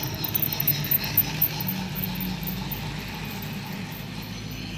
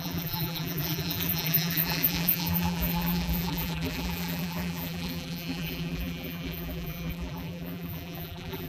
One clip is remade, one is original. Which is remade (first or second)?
second